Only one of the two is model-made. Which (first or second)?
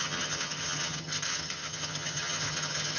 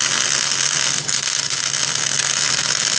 first